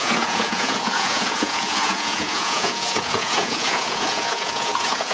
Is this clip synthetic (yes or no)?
yes